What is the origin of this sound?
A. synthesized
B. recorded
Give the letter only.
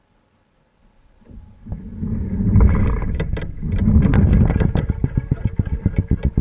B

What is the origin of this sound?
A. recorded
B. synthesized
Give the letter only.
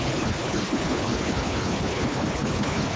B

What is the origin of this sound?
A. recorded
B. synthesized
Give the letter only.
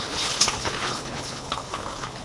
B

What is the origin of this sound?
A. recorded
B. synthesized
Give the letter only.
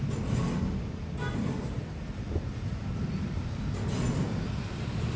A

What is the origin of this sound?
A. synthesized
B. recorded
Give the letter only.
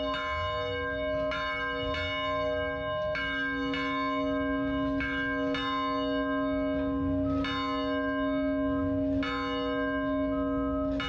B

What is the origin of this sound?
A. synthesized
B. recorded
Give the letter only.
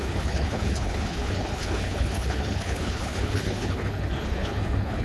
A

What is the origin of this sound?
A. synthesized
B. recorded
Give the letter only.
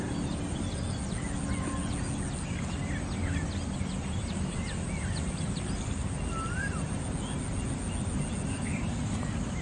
B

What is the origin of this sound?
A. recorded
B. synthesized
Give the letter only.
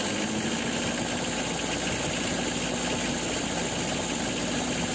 A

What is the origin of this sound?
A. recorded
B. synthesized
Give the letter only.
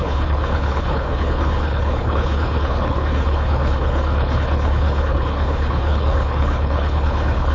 B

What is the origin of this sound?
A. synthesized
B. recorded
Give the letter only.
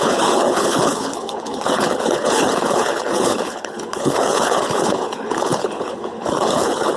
A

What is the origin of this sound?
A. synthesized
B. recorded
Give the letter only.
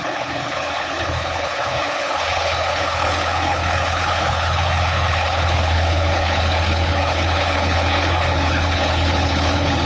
A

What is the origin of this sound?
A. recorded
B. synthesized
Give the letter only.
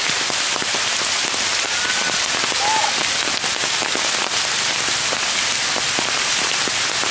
A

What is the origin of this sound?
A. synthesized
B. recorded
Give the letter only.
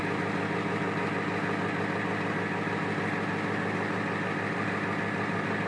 B